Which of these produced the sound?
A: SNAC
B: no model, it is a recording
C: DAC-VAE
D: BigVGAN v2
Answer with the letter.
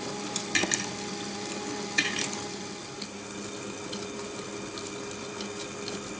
B